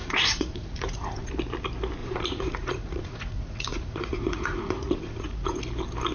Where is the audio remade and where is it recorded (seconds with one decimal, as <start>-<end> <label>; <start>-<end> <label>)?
0.0-1.3 remade; 1.3-2.0 recorded; 2.0-5.6 remade; 5.6-6.1 recorded